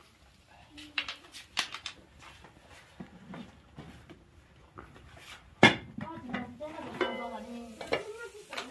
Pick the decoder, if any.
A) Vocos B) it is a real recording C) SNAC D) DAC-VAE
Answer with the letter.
B